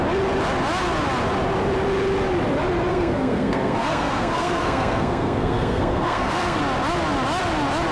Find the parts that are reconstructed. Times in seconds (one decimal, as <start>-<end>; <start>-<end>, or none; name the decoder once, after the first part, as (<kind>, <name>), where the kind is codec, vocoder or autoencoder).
2.9-6.6 (codec, SNAC)

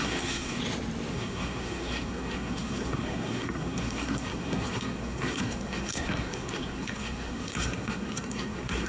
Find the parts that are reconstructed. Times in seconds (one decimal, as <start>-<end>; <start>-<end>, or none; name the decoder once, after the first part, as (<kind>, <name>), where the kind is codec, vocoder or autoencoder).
0.0-0.6 (codec, SNAC); 1.1-8.9

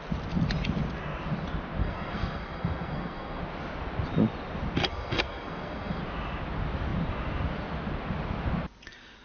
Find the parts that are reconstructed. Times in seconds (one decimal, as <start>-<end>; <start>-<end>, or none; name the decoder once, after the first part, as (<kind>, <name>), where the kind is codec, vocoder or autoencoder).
1.8-3.4 (codec, SNAC); 4.9-6.0

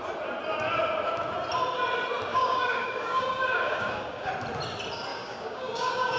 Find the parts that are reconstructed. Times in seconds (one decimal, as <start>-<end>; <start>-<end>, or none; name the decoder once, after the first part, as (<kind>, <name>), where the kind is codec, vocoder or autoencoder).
2.3-4.3 (codec, DAC); 5.1-6.2

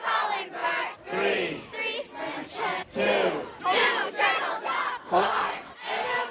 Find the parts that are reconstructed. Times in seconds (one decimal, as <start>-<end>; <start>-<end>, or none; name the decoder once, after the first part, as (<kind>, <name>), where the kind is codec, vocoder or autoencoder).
5.0-5.7 (codec, SNAC)

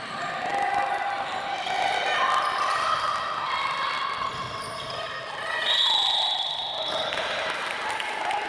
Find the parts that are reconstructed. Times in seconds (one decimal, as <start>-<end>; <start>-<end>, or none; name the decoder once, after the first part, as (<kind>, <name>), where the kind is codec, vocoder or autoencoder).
none

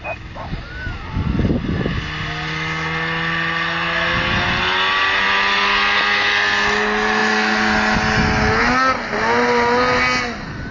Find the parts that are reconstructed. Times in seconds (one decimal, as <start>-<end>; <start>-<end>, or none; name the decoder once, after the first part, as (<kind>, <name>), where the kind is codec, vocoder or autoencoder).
none

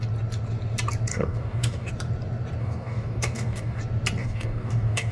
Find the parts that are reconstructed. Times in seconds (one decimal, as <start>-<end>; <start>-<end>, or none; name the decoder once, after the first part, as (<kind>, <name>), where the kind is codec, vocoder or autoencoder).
1.1-1.9 (codec, DAC); 2.6-3.8; 4.2-5.1